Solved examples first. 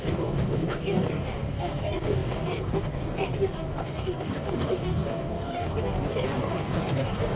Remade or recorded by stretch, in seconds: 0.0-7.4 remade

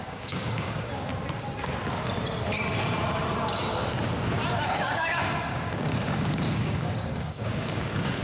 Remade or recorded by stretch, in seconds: 0.0-1.1 remade; 1.1-4.6 recorded; 4.6-8.2 remade